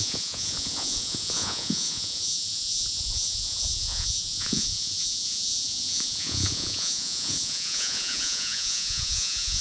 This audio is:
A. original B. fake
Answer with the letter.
B